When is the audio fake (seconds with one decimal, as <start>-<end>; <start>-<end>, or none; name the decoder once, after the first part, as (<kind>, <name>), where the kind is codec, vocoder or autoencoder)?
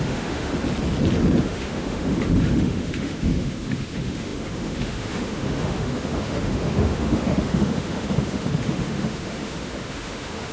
0.0-0.5 (autoencoder, DAC-VAE); 1.4-10.5